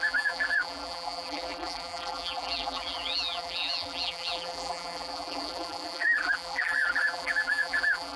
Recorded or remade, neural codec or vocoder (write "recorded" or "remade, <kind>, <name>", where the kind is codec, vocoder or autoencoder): remade, vocoder, BigVGAN v2